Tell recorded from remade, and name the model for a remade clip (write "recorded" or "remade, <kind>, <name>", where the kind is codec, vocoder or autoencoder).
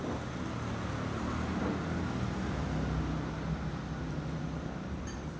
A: recorded